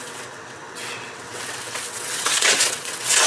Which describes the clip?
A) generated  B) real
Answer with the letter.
A